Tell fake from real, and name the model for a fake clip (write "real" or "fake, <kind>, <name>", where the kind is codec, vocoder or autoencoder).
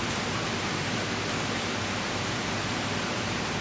fake, vocoder, BigVGAN v2